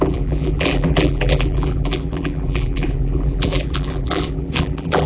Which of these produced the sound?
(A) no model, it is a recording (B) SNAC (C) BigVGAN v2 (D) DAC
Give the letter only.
C